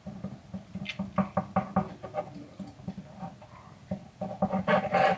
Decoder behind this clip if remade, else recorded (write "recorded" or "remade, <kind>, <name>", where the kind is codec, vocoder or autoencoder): recorded